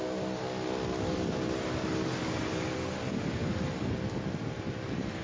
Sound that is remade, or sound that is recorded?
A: recorded